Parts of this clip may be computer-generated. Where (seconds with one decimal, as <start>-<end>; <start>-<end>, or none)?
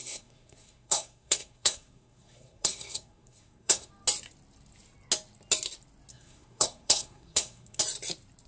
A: 0.0-3.9; 6.1-7.8